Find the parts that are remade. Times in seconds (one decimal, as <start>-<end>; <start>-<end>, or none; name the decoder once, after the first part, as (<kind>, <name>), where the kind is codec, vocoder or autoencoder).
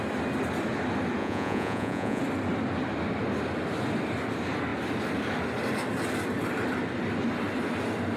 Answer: 1.2-2.2 (vocoder, Vocos)